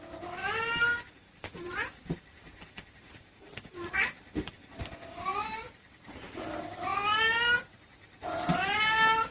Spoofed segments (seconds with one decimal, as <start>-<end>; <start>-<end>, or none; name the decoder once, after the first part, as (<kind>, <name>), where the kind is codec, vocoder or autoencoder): 0.4-4.4 (vocoder, BigVGAN v2); 5.3-6.1